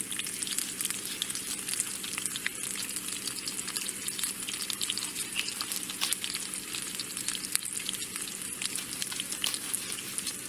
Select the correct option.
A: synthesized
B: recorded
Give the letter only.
B